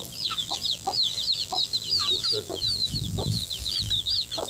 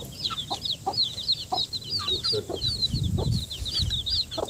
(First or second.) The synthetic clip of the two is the first